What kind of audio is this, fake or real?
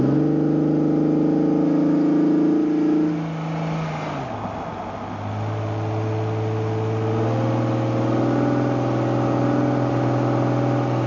real